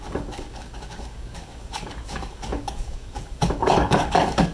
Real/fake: fake